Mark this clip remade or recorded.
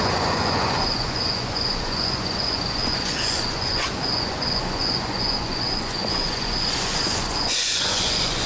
remade